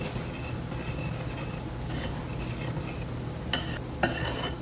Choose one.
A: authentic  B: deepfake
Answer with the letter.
A